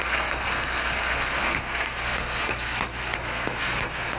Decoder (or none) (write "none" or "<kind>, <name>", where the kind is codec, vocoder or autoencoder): codec, SNAC